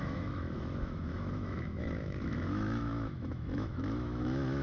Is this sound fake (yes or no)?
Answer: yes